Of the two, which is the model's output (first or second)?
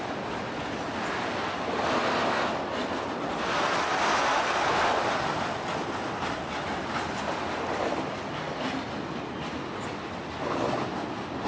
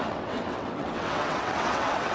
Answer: second